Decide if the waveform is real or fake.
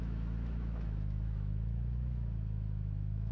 fake